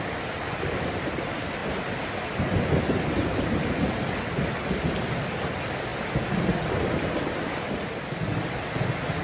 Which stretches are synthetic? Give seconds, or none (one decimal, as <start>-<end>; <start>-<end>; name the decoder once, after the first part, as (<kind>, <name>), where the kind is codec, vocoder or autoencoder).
none